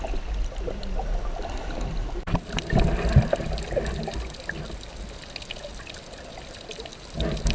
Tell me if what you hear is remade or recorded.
recorded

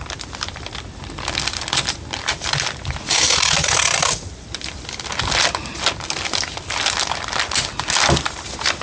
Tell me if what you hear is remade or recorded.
recorded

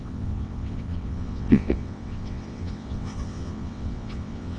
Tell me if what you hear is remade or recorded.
remade